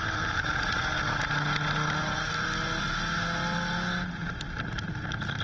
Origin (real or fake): real